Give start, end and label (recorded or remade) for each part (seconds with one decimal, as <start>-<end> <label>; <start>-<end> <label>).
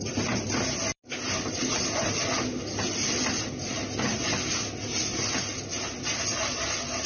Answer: 0.0-7.1 recorded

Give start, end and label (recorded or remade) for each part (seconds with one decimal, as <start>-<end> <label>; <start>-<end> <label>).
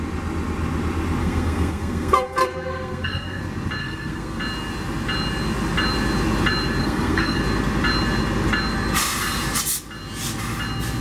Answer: 0.0-1.2 recorded; 1.2-3.4 remade; 3.4-3.8 recorded; 3.8-4.4 remade; 4.4-6.8 recorded; 6.8-7.4 remade; 7.4-11.0 recorded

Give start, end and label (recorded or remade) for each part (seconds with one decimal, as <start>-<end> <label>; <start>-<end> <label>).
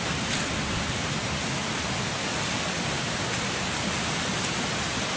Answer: 0.0-5.2 recorded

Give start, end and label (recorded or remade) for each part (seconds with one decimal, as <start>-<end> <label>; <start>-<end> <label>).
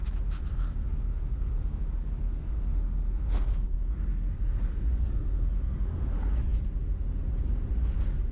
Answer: 0.0-0.5 recorded; 0.5-1.8 remade; 1.8-2.3 recorded; 2.3-6.1 remade; 6.1-8.3 recorded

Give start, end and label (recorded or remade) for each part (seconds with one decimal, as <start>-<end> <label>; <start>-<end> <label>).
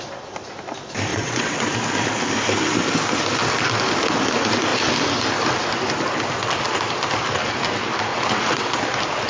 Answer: 0.0-1.1 recorded; 1.1-1.7 remade; 1.7-8.1 recorded; 8.1-8.7 remade; 8.7-9.3 recorded